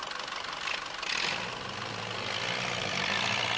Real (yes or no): yes